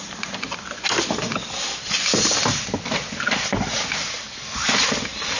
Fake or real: real